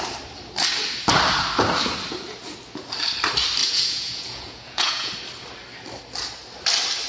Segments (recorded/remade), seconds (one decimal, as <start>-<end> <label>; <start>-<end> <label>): 0.0-3.6 recorded; 3.6-5.1 remade; 5.1-7.1 recorded